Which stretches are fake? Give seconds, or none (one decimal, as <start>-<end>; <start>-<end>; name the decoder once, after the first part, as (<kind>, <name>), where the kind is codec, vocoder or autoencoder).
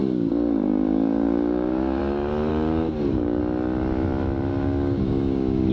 0.0-2.0 (codec, DAC); 2.5-3.4; 4.5-5.7